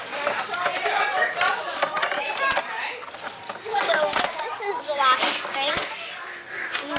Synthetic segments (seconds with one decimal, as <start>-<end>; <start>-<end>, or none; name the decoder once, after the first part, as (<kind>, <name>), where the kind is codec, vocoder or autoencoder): 3.7-4.7 (codec, DAC)